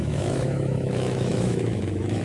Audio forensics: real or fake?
fake